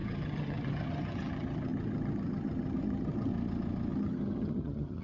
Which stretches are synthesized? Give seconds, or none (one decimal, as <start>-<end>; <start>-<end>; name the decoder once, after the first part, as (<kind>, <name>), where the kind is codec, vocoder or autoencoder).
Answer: 0.0-3.3 (vocoder, HiFi-GAN); 3.9-5.0